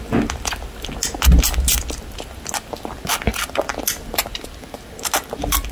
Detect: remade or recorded recorded